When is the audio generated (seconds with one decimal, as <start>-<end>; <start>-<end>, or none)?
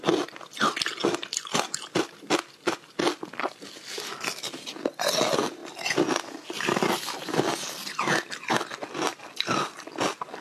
none